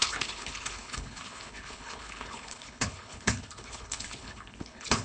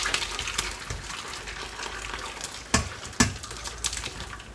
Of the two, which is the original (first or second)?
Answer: second